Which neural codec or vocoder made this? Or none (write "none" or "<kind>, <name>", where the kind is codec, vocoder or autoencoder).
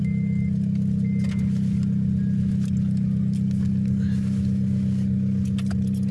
none